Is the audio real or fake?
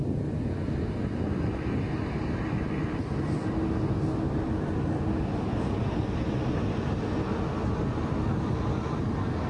real